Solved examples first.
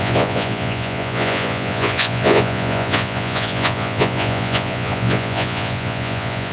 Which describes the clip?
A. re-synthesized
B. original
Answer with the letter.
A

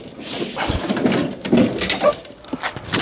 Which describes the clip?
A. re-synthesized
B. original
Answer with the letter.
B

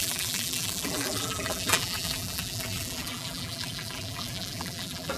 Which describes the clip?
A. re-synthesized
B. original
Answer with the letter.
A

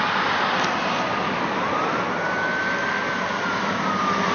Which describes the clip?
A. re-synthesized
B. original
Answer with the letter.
A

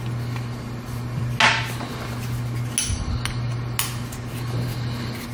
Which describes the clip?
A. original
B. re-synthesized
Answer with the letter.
A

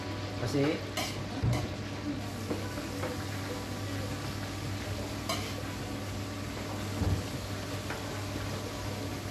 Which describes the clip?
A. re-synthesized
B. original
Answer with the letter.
B